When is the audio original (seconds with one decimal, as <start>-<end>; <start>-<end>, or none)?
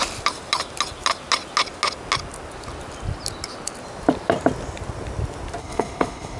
0.0-5.6